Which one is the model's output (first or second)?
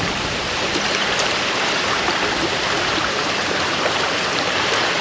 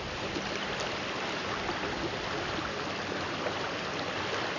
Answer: first